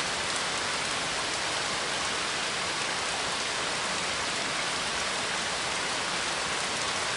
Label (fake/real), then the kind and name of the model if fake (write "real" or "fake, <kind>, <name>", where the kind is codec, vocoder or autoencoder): real